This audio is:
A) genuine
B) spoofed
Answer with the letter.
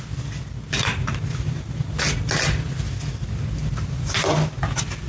A